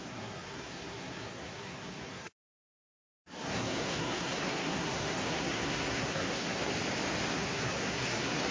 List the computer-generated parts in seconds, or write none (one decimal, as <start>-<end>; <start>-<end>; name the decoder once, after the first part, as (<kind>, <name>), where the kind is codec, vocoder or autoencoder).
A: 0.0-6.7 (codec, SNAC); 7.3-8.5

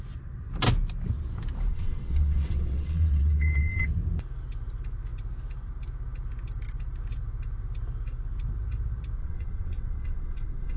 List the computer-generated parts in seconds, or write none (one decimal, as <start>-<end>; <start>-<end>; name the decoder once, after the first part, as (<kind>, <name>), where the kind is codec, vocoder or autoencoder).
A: 1.7-3.8 (vocoder, WaveNeXt); 9.2-10.8

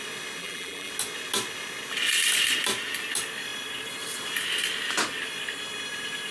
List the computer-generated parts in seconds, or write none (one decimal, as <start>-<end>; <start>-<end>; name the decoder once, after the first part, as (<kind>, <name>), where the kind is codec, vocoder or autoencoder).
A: 0.4-0.9 (vocoder, BigVGAN v2)